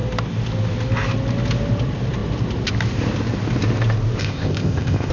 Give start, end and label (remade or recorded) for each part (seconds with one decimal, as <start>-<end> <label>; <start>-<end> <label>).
0.0-4.2 recorded; 4.2-5.1 remade